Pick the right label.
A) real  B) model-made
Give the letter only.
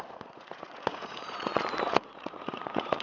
B